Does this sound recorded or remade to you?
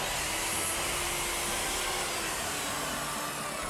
recorded